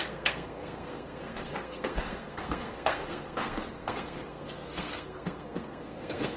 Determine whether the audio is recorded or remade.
remade